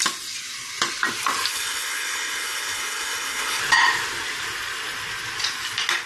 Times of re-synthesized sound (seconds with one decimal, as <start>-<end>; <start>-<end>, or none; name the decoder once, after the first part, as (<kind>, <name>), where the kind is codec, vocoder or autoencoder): 1.5-3.6 (codec, HILCodec)